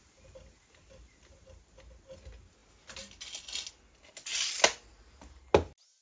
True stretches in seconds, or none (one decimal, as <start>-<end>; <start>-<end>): 0.0-6.0